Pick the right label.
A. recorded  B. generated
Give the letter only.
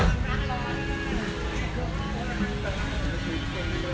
A